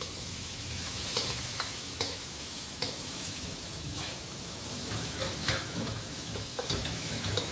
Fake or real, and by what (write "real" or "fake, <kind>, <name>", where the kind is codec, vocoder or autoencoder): fake, autoencoder, DAC-VAE